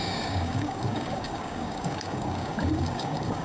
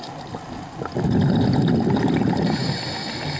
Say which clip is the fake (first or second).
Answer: first